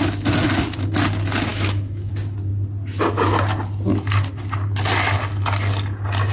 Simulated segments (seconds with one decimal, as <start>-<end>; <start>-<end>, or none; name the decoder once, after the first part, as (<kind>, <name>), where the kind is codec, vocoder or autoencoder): 1.5-2.1 (autoencoder, DAC-VAE)